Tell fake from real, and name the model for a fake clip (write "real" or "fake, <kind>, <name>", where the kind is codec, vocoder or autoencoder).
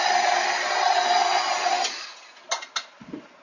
real